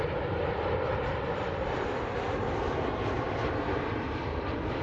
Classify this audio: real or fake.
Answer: fake